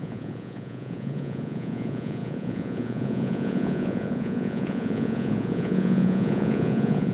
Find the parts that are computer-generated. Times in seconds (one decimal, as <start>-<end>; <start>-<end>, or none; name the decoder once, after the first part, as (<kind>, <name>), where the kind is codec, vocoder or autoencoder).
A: 0.0-7.1 (vocoder, Vocos)

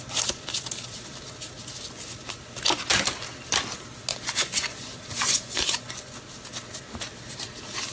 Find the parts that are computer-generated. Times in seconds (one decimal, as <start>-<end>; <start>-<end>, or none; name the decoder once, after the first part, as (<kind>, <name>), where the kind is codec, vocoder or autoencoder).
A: 4.1-6.1 (vocoder, Vocos)

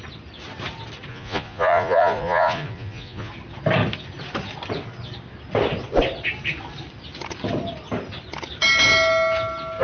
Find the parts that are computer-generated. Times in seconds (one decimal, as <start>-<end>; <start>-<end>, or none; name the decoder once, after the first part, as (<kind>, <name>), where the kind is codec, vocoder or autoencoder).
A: 1.1-3.3 (vocoder, Vocos)

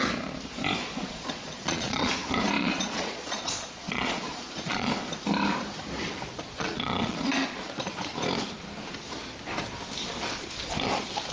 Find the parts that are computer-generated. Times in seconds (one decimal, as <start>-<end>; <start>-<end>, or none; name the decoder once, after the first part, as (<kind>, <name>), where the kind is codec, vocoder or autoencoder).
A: 0.8-2.1 (vocoder, Vocos); 2.6-4.9; 6.3-8.1

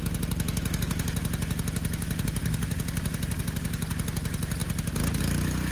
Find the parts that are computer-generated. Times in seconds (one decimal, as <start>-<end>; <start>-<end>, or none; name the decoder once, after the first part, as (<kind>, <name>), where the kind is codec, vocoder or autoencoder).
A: none

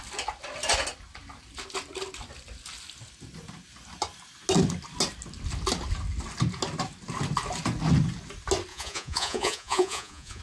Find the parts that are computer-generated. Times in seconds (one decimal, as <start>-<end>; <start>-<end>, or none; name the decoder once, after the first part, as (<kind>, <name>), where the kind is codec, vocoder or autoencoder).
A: 8.7-10.4 (vocoder, Vocos)